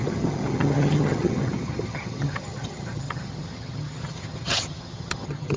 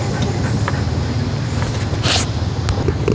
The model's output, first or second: first